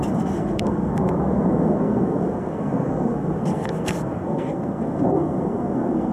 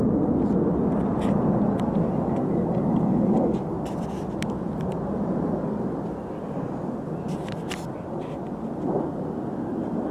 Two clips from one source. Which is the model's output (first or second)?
first